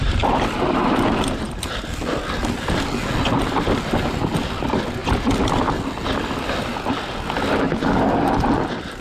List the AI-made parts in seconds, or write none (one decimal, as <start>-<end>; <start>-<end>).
none